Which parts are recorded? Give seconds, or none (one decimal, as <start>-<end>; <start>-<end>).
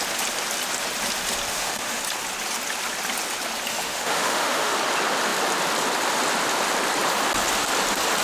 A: 0.0-1.5; 2.0-3.7; 4.8-8.2